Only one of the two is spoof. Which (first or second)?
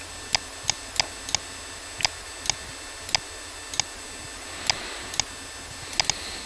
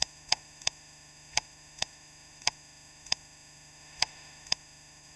second